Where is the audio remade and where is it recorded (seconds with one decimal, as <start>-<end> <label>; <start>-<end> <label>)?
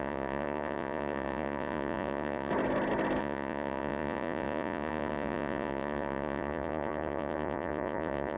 0.0-2.5 remade; 2.5-3.2 recorded; 3.2-8.4 remade